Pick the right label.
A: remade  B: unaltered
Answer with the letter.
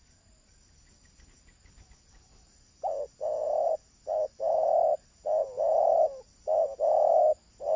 B